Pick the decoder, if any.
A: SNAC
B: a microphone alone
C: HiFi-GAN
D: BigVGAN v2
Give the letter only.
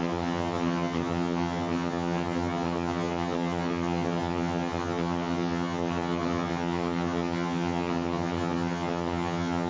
C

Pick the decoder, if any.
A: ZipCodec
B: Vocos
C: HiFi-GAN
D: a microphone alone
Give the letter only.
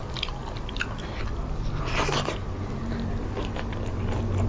D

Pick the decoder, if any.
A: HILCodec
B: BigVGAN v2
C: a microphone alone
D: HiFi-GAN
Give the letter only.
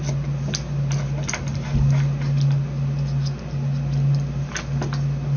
C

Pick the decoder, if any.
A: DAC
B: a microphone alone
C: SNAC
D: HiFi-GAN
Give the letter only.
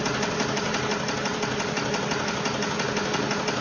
B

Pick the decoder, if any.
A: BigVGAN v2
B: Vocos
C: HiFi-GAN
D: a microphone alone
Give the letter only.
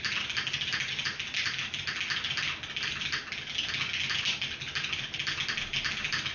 D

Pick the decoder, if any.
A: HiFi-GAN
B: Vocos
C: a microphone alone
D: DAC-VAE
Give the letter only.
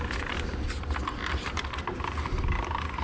C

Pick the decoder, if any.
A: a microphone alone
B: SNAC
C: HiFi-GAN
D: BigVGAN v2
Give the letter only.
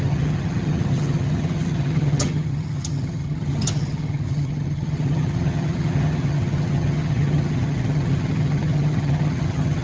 C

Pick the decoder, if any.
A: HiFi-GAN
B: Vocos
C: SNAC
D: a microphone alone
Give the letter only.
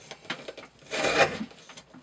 D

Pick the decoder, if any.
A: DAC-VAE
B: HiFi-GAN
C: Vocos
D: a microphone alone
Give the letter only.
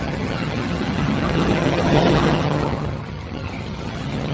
B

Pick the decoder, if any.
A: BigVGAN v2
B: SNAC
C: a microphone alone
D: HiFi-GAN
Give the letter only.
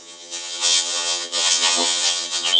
D